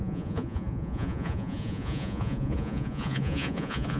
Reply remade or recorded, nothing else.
remade